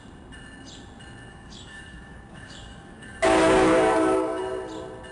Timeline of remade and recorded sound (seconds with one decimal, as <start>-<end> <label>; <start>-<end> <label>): 0.0-1.3 recorded; 1.3-4.4 remade; 4.4-5.1 recorded